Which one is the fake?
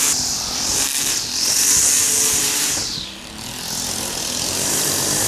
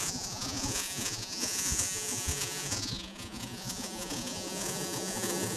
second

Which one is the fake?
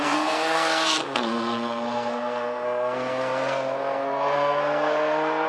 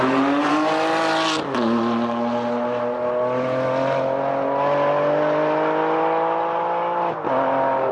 first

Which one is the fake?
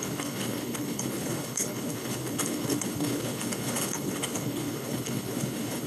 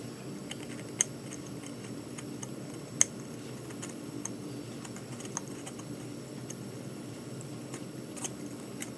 first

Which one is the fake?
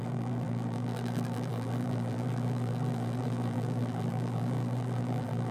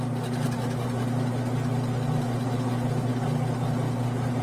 first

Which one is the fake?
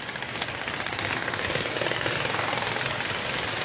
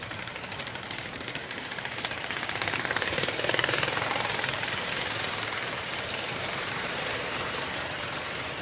second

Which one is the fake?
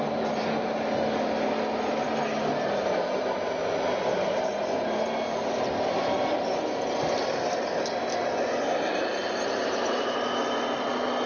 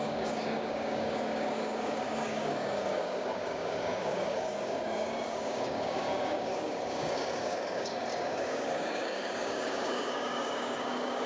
second